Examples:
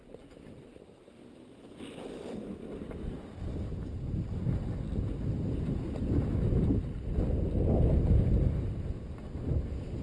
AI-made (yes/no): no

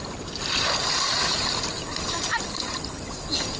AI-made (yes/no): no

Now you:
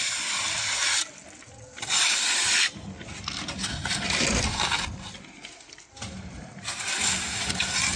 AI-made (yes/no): no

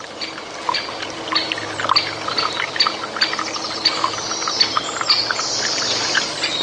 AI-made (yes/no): no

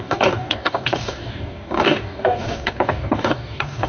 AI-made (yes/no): yes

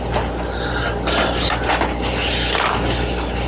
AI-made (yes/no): no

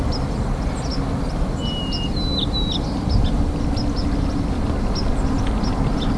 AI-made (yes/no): no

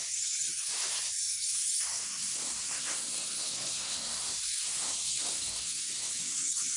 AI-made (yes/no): yes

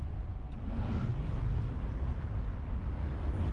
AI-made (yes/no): no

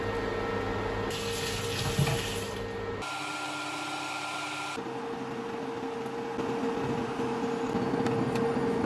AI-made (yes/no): no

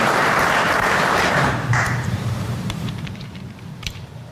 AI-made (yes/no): yes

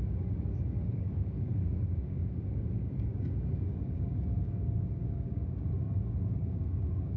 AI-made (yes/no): yes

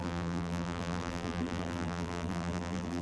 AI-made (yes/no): yes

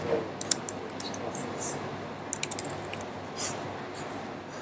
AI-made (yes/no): no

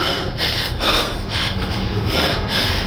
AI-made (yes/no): yes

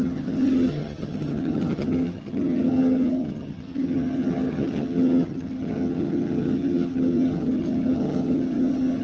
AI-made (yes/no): yes